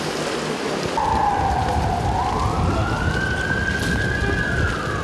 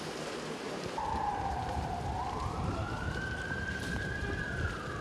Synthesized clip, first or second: second